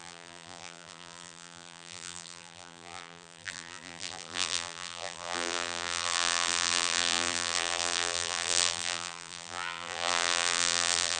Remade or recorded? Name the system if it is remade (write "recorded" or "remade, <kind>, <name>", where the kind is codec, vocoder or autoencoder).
remade, vocoder, BigVGAN v2